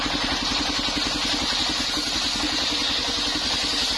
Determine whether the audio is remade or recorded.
recorded